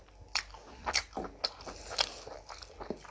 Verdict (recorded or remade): recorded